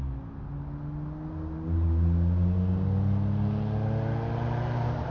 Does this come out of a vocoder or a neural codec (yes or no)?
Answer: no